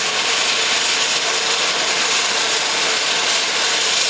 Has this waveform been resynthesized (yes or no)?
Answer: no